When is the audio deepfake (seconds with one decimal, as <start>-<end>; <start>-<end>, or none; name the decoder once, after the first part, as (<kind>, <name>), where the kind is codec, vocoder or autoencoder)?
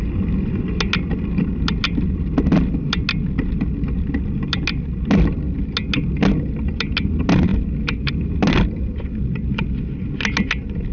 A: none